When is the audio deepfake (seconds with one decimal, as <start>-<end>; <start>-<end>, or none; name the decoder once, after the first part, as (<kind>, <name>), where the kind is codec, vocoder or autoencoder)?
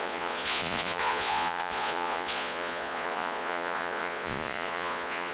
0.0-5.3 (vocoder, Vocos)